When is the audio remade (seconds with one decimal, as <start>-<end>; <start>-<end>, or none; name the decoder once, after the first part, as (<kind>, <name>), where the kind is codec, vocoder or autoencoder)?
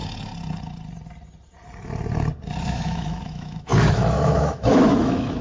2.6-5.4 (autoencoder, DAC-VAE)